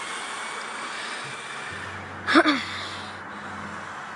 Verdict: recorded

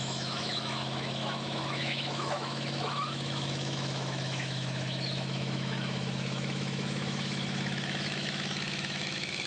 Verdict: remade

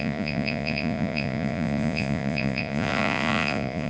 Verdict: remade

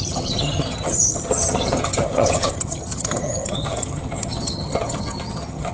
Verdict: remade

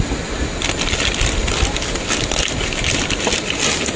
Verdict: recorded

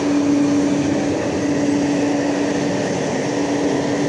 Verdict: recorded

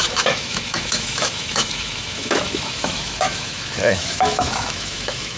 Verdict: remade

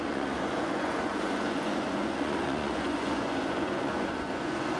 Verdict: remade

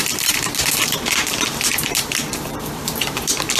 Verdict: remade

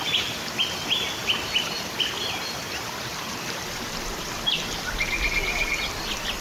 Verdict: recorded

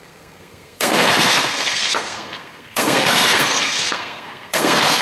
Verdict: remade